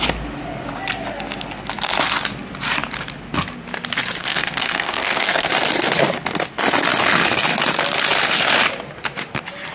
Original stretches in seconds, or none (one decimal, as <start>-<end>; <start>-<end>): 0.0-4.2; 5.5-9.7